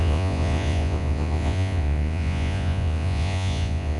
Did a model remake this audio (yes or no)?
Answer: yes